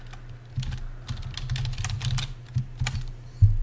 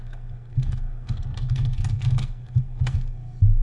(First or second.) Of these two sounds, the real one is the first